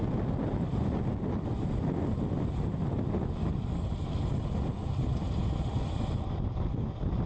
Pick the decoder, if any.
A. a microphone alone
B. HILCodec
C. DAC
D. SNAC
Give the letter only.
A